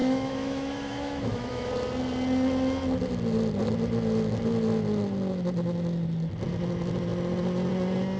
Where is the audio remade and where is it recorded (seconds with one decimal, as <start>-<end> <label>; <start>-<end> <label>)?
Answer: 0.0-1.7 remade; 1.7-8.2 recorded

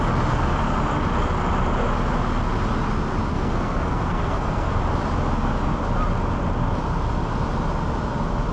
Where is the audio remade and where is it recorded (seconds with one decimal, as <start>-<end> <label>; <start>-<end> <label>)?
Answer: 0.0-3.3 recorded; 3.3-4.7 remade; 4.7-8.5 recorded

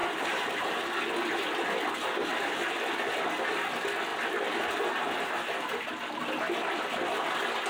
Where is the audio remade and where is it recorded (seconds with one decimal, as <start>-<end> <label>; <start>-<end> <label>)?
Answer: 0.0-0.8 remade; 0.8-2.3 recorded; 2.3-2.8 remade; 2.8-4.1 recorded; 4.1-6.2 remade; 6.2-7.7 recorded

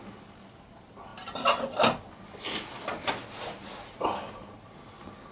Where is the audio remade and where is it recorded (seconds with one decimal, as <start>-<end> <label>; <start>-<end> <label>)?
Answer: 0.0-5.3 recorded